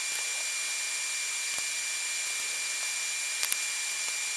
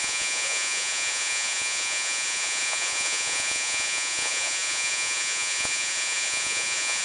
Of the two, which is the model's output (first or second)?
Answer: second